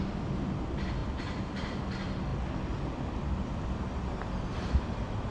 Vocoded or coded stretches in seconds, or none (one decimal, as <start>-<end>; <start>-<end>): 1.0-1.8